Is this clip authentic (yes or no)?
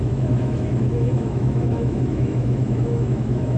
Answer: no